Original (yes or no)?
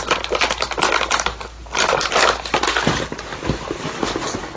yes